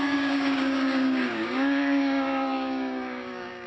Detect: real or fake fake